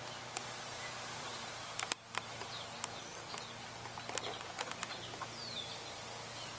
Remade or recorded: recorded